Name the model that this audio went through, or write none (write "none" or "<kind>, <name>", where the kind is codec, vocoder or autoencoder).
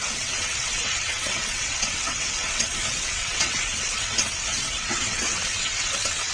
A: vocoder, WaveNeXt